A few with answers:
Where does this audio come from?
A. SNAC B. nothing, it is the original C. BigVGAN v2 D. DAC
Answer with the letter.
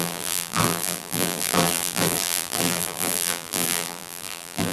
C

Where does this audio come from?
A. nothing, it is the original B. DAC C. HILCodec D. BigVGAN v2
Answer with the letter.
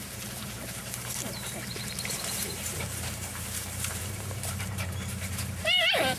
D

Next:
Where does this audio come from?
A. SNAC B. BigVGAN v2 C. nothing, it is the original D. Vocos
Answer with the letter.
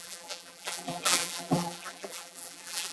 B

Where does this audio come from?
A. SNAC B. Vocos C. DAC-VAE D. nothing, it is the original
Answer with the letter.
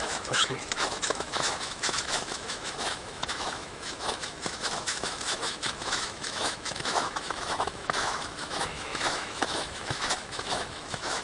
C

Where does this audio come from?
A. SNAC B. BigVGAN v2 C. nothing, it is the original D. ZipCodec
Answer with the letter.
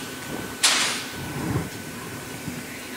B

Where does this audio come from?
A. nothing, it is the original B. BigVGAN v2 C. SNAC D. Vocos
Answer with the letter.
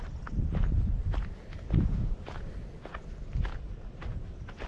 B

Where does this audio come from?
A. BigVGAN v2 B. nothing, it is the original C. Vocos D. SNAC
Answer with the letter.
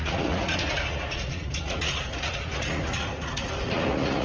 C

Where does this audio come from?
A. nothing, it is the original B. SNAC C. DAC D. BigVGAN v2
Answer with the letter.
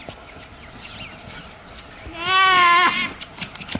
A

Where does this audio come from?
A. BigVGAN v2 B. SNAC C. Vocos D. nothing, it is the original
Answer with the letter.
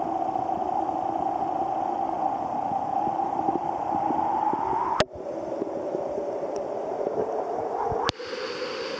D